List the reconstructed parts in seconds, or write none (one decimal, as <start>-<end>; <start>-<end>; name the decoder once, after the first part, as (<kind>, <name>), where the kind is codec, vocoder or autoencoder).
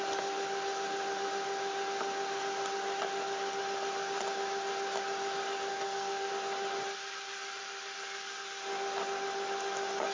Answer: 5.7-6.3 (codec, SNAC)